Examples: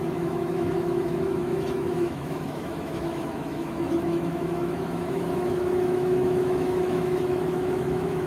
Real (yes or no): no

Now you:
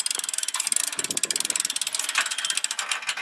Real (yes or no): yes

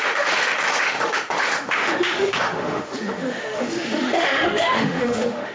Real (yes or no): no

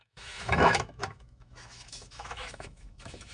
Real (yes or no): no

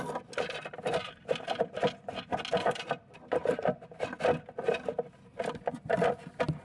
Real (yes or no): yes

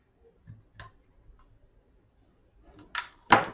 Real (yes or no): yes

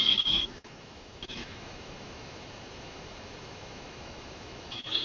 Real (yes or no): no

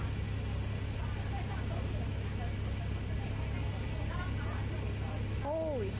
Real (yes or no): yes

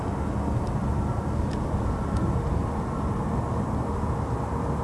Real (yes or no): yes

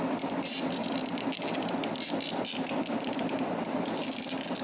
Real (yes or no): yes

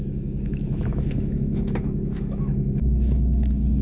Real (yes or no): no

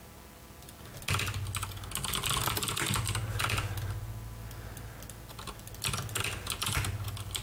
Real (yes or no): yes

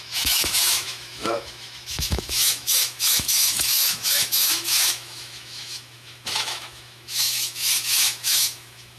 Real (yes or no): no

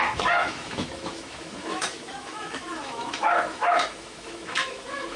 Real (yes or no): no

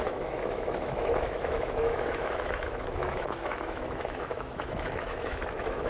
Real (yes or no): no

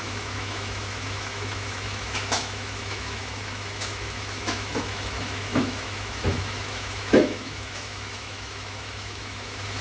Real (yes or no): no